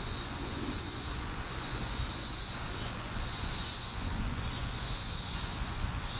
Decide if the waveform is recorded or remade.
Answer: remade